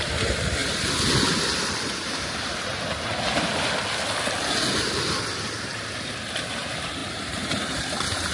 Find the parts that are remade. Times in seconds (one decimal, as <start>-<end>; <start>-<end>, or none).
0.0-0.6; 1.8-3.5; 6.4-8.3